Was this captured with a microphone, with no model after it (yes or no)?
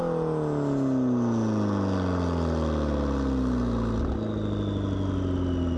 yes